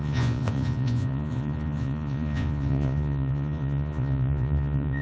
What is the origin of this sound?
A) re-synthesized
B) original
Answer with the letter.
A